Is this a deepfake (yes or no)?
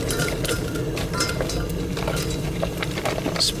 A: no